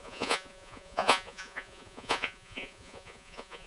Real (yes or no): no